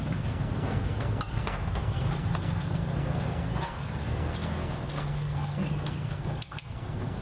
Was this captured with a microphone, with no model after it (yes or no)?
no